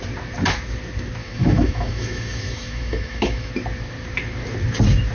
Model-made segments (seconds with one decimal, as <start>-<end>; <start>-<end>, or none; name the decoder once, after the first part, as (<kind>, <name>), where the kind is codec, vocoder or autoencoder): 1.2-3.5 (autoencoder, DAC-VAE)